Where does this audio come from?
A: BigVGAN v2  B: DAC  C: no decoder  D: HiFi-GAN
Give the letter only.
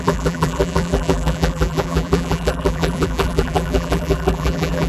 A